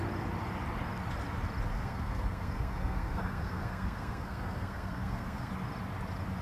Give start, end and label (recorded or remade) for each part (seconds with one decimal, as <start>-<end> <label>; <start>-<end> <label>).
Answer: 0.0-1.7 recorded; 1.7-5.5 remade; 5.5-6.4 recorded